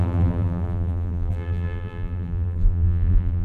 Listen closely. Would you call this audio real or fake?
fake